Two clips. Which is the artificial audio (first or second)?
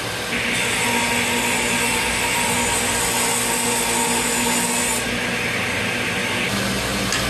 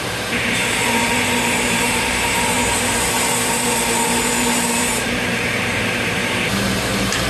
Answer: second